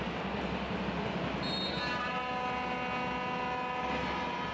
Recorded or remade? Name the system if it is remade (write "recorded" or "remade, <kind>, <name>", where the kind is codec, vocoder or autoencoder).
recorded